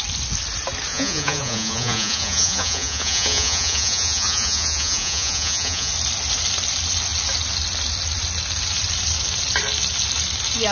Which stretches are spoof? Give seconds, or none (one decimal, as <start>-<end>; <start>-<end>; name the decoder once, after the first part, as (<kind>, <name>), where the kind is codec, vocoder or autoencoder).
0.9-5.9 (vocoder, Vocos)